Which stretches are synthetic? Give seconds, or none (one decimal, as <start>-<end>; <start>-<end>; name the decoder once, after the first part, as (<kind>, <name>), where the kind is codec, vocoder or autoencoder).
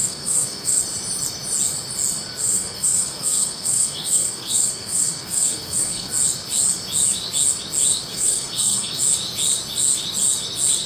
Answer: 0.0-0.8 (codec, SNAC); 2.4-6.1; 8.1-9.0